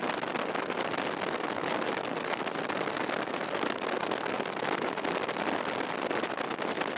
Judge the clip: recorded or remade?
recorded